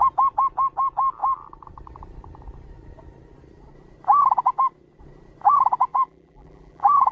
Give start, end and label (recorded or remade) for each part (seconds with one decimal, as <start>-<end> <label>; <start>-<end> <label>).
0.0-5.9 recorded; 5.9-7.1 remade